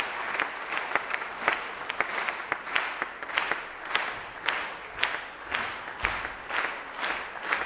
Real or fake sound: real